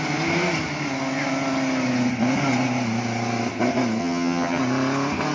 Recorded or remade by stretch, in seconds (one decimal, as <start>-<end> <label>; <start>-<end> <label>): 0.0-4.0 recorded; 4.0-4.6 remade; 4.6-5.3 recorded